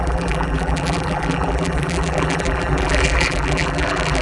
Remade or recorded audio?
remade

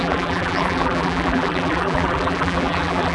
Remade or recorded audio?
remade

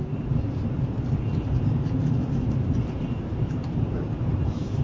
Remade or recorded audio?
remade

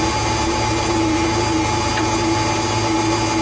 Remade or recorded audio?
recorded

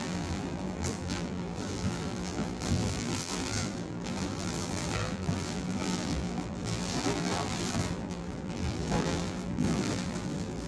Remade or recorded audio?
remade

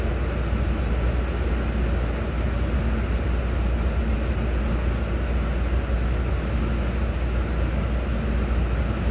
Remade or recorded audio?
recorded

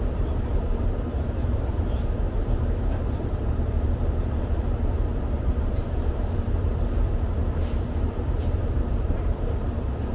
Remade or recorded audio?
remade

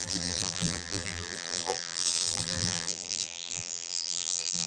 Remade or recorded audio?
remade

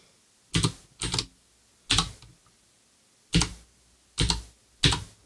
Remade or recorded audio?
recorded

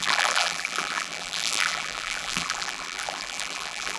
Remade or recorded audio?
remade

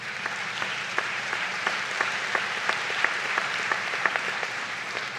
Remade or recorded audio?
remade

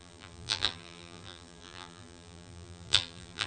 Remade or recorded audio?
remade